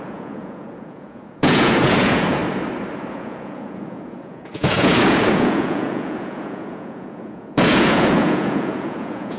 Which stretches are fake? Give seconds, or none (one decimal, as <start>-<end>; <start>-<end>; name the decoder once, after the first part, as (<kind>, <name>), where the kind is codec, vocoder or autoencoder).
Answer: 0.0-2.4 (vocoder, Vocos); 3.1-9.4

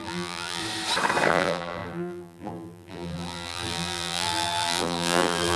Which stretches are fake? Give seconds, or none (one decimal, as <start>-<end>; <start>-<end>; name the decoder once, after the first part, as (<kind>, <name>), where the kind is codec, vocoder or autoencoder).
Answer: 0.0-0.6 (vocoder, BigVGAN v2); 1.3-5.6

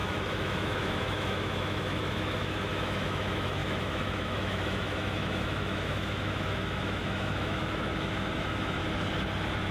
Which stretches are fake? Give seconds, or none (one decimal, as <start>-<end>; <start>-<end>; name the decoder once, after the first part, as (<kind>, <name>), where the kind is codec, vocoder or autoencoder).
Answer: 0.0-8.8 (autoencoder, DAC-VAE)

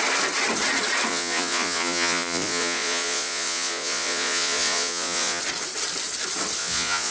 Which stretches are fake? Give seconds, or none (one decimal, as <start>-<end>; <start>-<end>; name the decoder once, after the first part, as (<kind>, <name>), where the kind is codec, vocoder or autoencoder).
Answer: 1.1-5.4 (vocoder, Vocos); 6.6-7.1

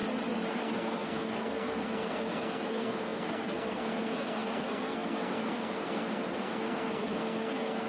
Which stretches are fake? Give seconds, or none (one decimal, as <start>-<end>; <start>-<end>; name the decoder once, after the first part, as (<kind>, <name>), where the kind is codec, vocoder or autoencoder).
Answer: 0.5-7.9 (codec, SNAC)

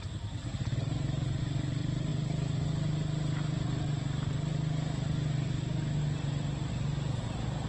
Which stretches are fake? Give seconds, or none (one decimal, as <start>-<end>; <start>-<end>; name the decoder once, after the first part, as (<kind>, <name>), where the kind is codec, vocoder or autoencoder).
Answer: none

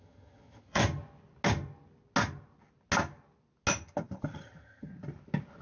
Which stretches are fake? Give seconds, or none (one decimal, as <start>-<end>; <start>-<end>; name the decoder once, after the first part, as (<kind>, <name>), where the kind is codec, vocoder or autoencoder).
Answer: 0.0-0.8 (vocoder, HiFi-GAN); 4.2-4.9